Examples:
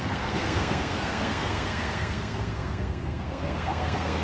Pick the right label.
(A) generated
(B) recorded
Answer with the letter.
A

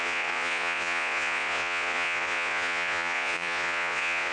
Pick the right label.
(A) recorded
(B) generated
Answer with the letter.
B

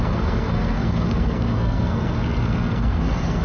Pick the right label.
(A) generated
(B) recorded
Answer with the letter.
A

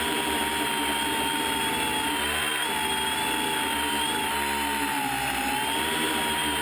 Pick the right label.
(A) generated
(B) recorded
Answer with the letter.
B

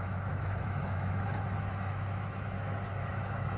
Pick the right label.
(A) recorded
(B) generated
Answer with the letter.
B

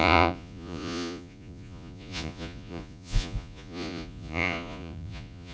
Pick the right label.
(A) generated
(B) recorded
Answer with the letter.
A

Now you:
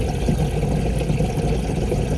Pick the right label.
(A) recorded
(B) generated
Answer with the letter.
A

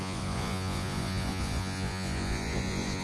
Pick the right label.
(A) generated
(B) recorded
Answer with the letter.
A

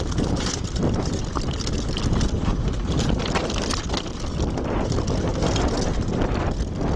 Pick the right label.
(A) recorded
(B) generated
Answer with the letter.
A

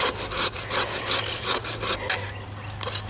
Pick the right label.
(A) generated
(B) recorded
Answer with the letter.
B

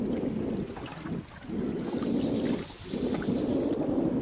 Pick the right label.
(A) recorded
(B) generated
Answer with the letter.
A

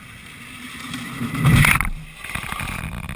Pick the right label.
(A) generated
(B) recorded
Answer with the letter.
B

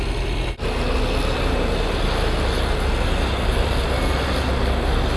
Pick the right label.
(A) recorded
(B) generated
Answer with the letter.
A